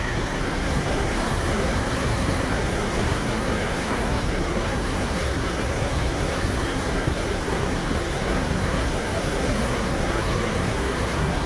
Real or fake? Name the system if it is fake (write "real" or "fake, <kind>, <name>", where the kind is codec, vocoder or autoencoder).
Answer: fake, codec, SNAC